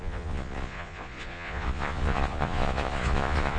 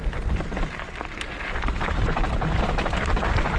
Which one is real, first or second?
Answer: second